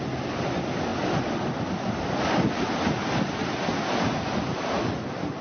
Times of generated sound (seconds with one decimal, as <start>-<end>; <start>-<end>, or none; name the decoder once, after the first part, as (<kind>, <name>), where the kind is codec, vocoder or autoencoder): none